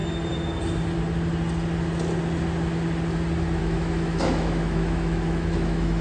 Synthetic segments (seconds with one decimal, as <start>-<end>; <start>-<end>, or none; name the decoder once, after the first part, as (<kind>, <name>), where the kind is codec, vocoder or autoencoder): 3.6-6.0 (autoencoder, DAC-VAE)